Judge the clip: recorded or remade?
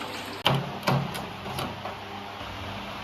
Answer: recorded